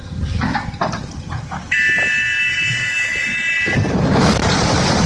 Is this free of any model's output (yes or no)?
no